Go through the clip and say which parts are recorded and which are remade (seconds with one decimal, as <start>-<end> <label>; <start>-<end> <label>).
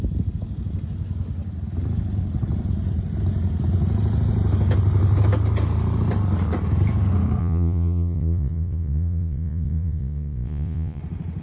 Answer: 0.0-7.4 recorded; 7.4-11.0 remade; 11.0-11.4 recorded